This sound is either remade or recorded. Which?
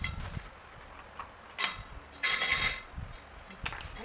recorded